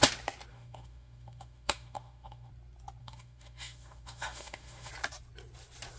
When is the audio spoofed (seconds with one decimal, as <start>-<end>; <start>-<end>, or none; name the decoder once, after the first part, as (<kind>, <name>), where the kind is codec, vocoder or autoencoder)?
0.5-2.5 (autoencoder, DAC-VAE); 3.0-4.9